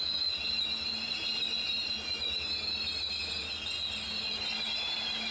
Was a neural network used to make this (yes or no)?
no